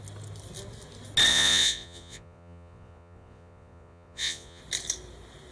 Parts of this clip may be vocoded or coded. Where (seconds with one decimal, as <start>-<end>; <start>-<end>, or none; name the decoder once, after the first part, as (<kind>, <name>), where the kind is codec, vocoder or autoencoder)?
1.3-4.6 (vocoder, Vocos)